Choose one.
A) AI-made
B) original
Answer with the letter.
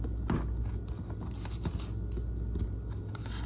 B